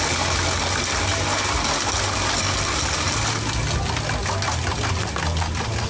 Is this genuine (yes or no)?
yes